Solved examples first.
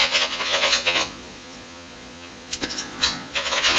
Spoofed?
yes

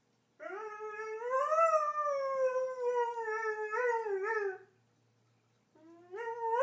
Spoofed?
no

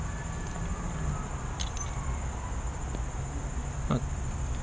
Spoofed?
no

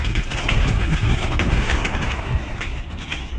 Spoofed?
yes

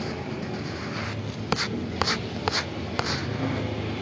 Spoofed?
no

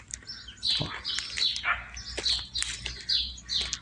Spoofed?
no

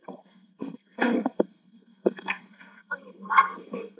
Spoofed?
yes